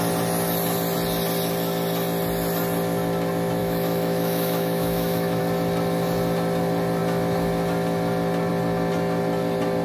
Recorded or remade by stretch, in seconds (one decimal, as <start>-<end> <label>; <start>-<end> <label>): 0.0-3.6 recorded; 3.6-5.4 remade; 5.4-9.8 recorded